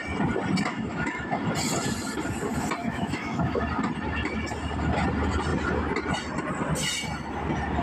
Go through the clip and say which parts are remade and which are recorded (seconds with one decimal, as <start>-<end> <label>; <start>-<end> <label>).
0.0-0.7 recorded; 0.7-1.3 remade; 1.3-2.8 recorded; 2.8-3.6 remade; 3.6-7.8 recorded